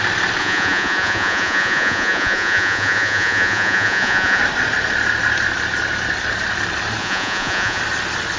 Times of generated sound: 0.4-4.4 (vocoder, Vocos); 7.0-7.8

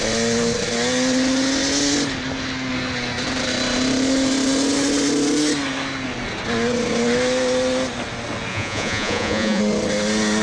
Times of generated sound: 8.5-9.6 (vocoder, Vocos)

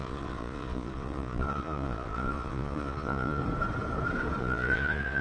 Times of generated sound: 0.0-3.4 (vocoder, Vocos); 4.4-5.2

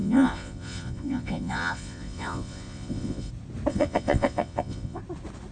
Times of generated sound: 0.0-3.3 (vocoder, Vocos); 3.7-5.0